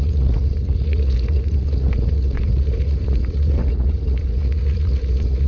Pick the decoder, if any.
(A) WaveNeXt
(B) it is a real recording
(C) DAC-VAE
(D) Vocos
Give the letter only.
D